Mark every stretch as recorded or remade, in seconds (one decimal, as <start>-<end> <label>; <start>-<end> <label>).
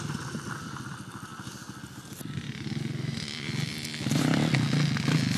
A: 0.0-5.4 recorded